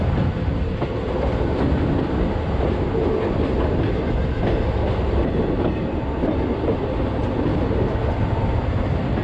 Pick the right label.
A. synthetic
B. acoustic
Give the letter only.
B